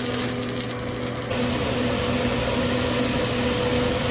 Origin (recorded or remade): recorded